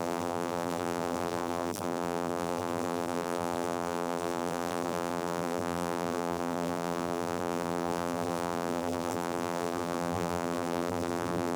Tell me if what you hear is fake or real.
fake